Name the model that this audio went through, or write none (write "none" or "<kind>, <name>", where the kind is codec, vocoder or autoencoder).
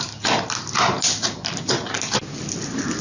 none